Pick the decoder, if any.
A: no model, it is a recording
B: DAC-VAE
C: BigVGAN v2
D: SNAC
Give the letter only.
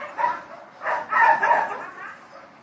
A